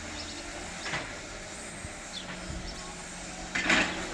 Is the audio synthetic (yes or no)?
no